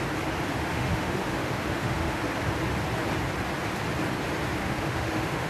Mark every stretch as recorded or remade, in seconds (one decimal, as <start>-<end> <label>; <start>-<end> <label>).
0.0-0.7 recorded; 0.7-2.2 remade; 2.2-4.6 recorded; 4.6-5.5 remade